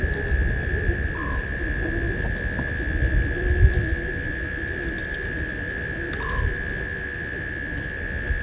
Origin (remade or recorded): recorded